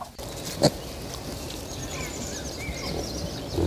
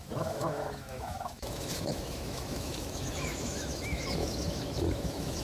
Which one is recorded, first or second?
first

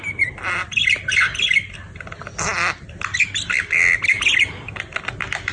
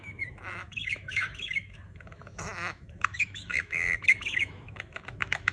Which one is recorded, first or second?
first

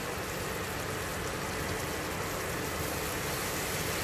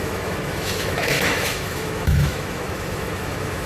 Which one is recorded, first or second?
first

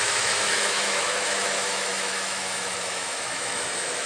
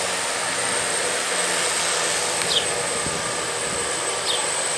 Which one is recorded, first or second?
second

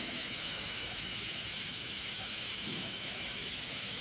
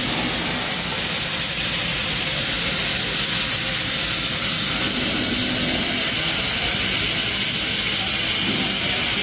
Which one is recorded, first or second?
second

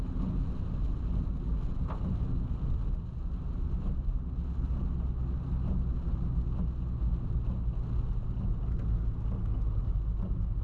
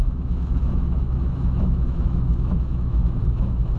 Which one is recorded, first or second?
first